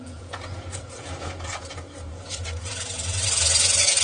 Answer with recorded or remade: remade